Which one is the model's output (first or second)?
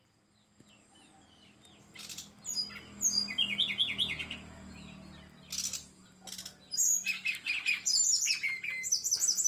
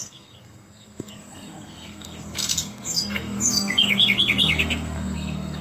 second